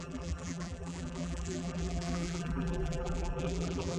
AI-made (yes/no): yes